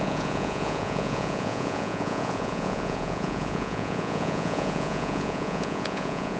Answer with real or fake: fake